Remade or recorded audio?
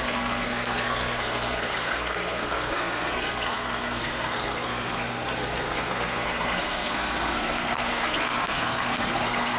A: remade